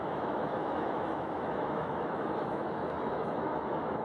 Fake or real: fake